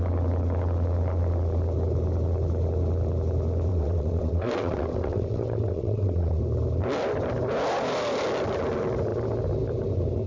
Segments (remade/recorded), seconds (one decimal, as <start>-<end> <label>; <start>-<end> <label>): 0.0-3.7 recorded; 3.7-6.4 remade; 6.4-10.3 recorded